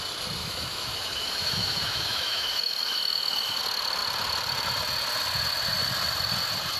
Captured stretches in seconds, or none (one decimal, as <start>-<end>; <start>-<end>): 0.0-0.4; 3.6-6.8